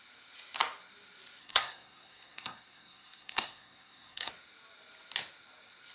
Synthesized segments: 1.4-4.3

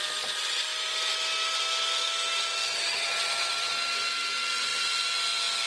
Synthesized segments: none

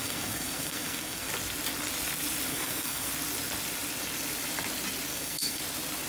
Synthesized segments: 0.0-1.3; 2.5-3.1; 5.1-5.6

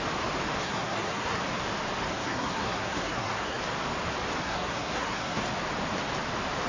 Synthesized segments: 0.6-1.4; 2.1-3.6; 4.4-5.4